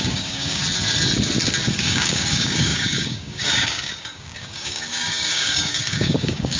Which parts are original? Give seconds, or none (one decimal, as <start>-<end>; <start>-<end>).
0.6-1.8